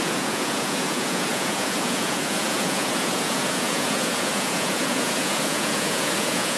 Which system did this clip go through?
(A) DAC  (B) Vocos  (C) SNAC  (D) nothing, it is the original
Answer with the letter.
B